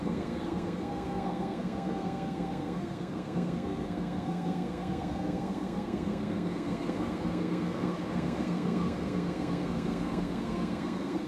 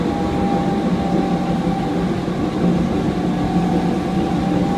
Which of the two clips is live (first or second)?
second